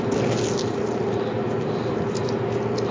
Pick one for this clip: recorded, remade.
recorded